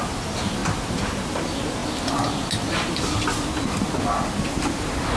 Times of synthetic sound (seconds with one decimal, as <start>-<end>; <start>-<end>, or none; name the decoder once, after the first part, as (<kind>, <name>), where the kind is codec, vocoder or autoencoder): none